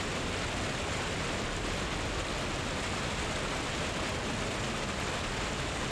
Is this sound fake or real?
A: real